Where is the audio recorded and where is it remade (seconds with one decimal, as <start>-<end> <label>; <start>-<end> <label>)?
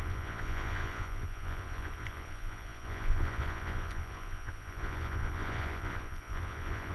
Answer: 0.0-6.9 remade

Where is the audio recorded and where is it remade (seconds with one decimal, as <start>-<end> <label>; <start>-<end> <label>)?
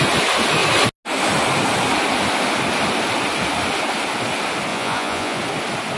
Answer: 0.0-4.7 recorded; 4.7-5.4 remade; 5.4-6.0 recorded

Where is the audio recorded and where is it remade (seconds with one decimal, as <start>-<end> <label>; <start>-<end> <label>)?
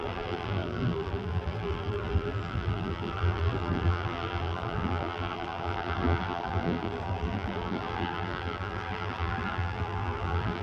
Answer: 0.0-10.6 remade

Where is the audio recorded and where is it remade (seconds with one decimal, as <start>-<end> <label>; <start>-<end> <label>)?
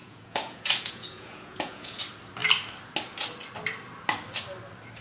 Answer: 0.0-2.0 remade; 2.0-5.0 recorded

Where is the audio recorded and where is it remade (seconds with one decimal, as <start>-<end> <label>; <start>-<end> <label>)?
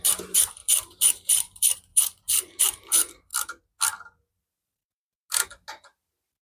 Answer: 0.0-3.3 remade; 3.3-4.3 recorded; 4.3-4.8 remade; 4.8-6.4 recorded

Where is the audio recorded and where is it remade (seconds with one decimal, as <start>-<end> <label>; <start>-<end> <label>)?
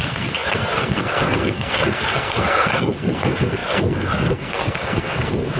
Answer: 0.0-5.6 remade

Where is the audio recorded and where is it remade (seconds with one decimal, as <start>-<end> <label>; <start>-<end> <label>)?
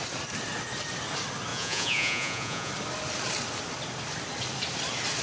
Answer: 0.0-1.5 recorded; 1.5-2.7 remade; 2.7-5.2 recorded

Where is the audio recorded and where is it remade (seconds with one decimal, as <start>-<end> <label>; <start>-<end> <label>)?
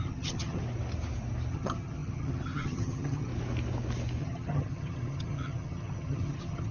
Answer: 0.0-0.6 remade; 0.6-1.5 recorded; 1.5-3.3 remade; 3.3-4.2 recorded; 4.2-6.7 remade